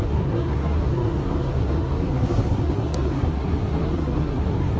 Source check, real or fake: fake